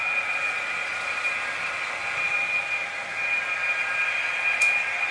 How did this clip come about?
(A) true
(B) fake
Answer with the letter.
A